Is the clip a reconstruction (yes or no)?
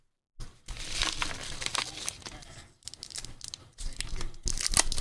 no